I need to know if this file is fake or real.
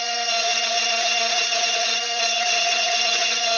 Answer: fake